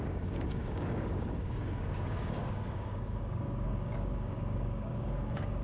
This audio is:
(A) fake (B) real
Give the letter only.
A